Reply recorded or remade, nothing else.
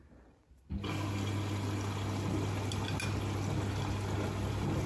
recorded